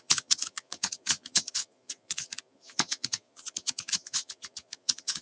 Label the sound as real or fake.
fake